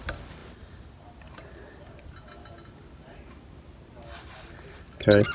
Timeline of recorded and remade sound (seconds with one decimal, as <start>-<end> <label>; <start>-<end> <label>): 0.0-5.3 recorded